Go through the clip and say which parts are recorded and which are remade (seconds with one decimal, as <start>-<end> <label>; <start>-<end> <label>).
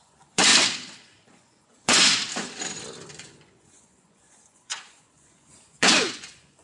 0.0-0.5 remade; 0.5-1.0 recorded; 1.0-2.1 remade; 2.1-3.1 recorded; 3.1-6.6 remade